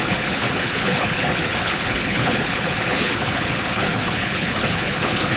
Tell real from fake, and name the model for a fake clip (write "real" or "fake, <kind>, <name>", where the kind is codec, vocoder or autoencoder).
fake, codec, HILCodec